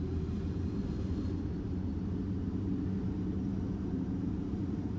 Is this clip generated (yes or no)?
yes